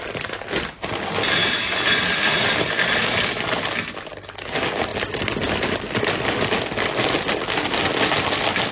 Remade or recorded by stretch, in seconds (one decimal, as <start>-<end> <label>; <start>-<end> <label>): 0.0-8.7 recorded